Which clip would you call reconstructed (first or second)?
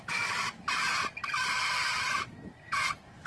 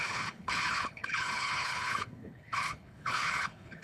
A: second